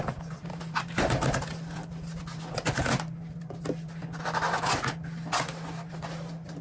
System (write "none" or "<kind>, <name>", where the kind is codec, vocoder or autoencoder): none